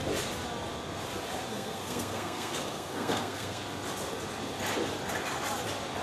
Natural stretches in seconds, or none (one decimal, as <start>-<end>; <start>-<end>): 0.0-1.5; 3.6-6.0